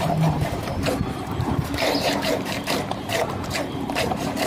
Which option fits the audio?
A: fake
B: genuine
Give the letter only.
A